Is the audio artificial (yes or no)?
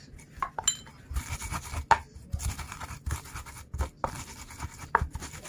no